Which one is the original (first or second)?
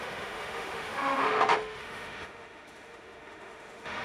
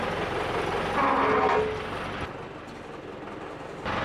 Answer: second